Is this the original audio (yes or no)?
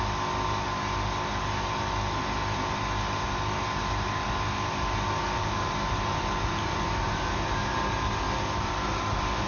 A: yes